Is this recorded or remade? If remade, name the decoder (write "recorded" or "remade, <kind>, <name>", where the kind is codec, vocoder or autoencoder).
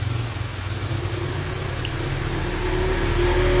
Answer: recorded